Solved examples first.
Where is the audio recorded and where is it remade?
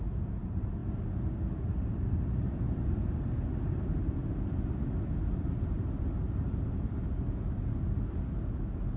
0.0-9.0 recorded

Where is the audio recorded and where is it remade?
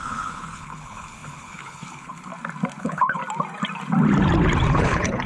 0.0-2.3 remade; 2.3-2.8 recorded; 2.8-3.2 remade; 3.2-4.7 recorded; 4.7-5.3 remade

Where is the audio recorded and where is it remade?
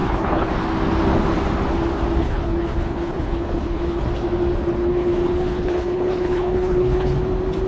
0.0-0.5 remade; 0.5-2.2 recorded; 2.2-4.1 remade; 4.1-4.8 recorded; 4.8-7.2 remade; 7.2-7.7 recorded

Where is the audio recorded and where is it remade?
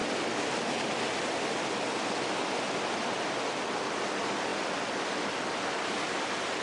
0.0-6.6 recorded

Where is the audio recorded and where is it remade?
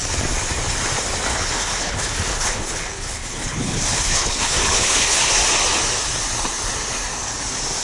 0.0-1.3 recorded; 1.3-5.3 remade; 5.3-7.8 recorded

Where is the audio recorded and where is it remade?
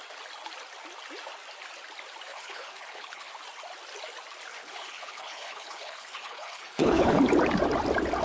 0.0-2.3 recorded; 2.3-3.3 remade; 3.3-4.5 recorded; 4.5-7.2 remade; 7.2-8.2 recorded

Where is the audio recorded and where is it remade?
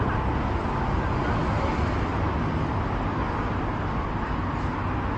0.0-5.2 recorded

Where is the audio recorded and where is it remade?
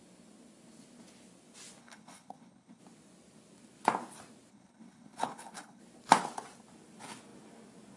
0.0-1.8 recorded; 1.8-2.8 remade; 2.8-4.5 recorded; 4.5-5.8 remade; 5.8-8.0 recorded